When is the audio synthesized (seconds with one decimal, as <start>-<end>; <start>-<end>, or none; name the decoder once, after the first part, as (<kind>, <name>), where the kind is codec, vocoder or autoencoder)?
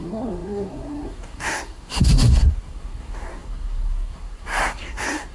0.0-5.3 (codec, SNAC)